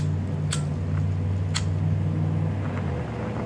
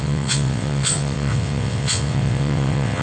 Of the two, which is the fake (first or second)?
second